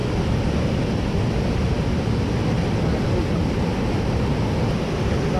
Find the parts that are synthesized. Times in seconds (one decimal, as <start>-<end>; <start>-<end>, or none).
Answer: none